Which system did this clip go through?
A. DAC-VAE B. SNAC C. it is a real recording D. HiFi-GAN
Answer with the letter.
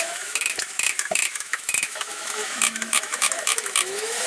A